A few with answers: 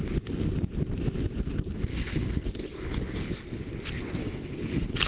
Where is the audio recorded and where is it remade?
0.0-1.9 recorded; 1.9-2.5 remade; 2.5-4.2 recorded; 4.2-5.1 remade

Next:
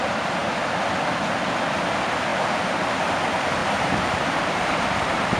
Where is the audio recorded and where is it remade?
0.0-2.3 recorded; 2.3-3.1 remade; 3.1-3.6 recorded; 3.6-5.4 remade